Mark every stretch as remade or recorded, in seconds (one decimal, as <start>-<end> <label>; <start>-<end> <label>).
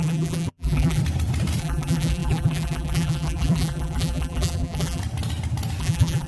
0.0-1.0 remade; 1.0-1.6 recorded; 1.6-5.0 remade; 5.0-5.8 recorded; 5.8-6.3 remade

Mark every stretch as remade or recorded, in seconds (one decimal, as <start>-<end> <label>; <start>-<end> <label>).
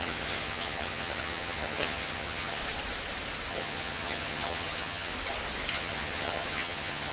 0.0-2.6 remade; 2.6-3.5 recorded; 3.5-5.1 remade; 5.1-5.7 recorded; 5.7-7.1 remade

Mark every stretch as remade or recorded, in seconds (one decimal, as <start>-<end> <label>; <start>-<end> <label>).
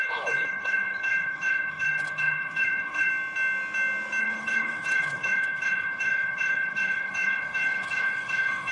0.0-3.1 remade; 3.1-4.2 recorded; 4.2-8.7 remade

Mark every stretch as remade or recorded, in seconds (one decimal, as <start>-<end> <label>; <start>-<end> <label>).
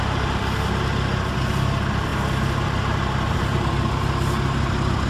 0.0-5.1 recorded